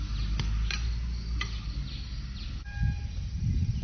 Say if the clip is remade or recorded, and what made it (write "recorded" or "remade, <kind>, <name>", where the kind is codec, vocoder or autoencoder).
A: recorded